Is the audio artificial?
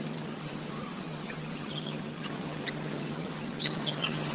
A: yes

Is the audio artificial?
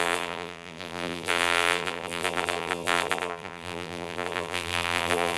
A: yes